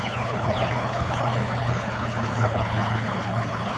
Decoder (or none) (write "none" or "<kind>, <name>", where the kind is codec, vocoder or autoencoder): codec, HILCodec